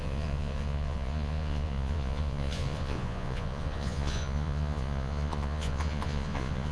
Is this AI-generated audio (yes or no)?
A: yes